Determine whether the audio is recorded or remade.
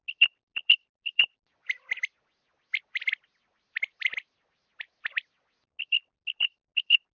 recorded